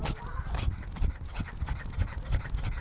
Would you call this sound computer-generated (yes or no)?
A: no